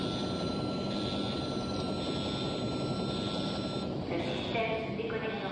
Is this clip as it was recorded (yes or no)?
yes